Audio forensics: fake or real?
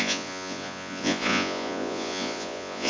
fake